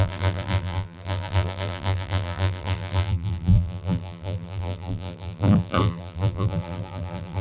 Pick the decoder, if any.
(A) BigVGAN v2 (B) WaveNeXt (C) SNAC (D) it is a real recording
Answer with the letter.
A